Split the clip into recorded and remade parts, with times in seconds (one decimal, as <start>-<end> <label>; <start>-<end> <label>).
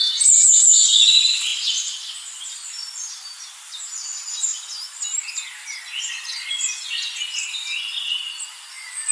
0.0-9.1 recorded